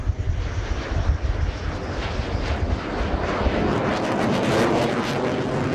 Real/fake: real